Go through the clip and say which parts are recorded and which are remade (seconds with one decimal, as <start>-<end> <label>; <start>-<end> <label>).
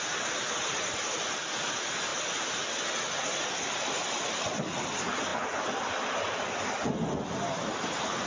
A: 0.0-8.3 recorded